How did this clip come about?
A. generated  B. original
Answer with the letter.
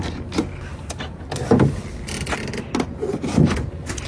B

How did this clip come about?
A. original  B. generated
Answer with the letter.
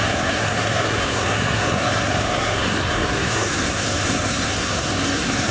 B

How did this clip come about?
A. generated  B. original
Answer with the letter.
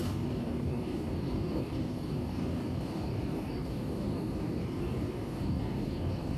A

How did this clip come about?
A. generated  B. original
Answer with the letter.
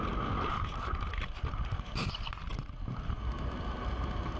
B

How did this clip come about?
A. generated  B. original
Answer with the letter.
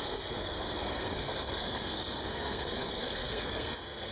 A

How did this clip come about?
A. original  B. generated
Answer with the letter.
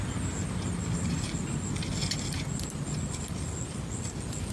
A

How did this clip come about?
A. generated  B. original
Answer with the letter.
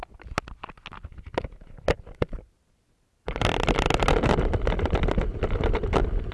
B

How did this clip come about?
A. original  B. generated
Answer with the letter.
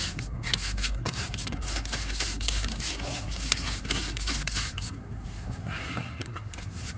B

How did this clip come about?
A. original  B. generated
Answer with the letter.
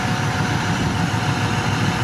A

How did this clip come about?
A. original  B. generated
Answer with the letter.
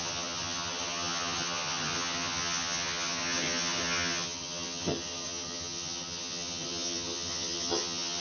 B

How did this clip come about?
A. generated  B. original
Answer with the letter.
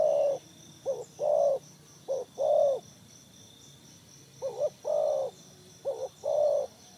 B